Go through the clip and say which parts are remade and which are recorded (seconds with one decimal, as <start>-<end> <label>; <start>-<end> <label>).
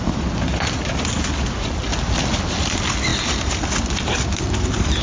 0.0-5.0 recorded